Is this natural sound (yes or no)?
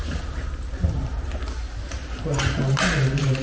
no